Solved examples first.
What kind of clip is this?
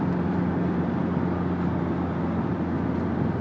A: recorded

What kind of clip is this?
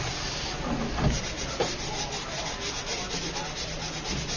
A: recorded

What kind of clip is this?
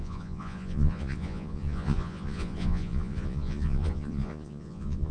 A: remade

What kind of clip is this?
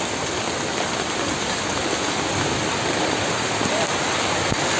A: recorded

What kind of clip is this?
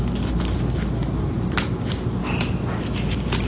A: recorded